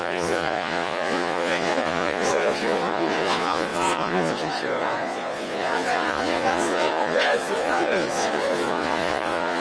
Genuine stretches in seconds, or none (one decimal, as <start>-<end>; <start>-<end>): none